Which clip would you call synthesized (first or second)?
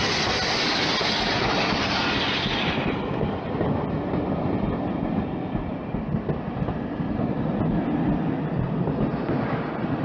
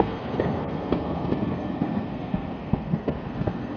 second